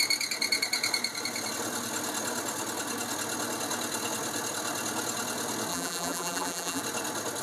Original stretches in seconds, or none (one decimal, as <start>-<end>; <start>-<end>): 0.0-5.7; 6.8-7.4